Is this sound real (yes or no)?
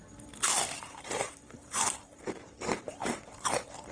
no